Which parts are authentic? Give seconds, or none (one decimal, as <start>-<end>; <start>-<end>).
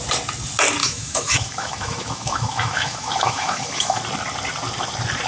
0.0-0.8; 4.0-5.3